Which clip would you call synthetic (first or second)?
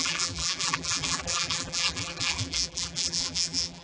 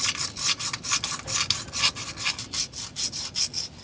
first